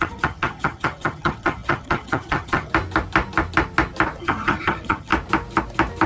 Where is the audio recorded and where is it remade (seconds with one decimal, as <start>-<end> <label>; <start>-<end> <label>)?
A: 0.0-2.7 remade; 2.7-4.2 recorded; 4.2-5.1 remade; 5.1-6.1 recorded